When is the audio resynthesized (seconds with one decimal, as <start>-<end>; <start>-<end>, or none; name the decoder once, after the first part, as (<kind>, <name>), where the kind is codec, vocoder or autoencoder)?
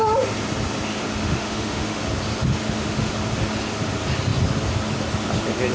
1.2-2.0 (autoencoder, DAC-VAE); 2.6-3.1